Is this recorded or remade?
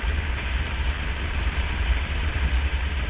recorded